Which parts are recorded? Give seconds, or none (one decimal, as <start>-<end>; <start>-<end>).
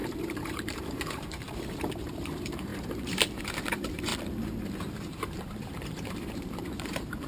4.1-5.0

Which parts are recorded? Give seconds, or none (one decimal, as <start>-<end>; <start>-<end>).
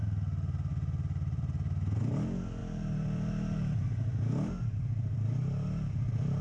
0.0-0.7; 1.4-2.6